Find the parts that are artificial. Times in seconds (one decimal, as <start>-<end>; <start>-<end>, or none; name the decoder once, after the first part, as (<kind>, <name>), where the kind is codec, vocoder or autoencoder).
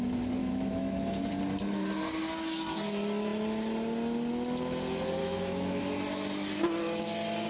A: 0.4-1.3 (autoencoder, DAC-VAE); 5.2-5.8